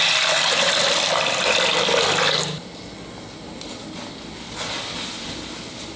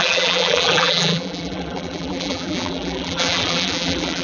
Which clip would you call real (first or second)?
first